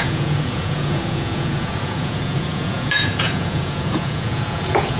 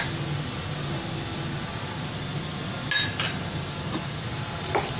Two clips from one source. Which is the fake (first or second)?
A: first